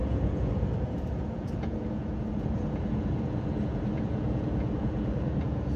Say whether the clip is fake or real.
fake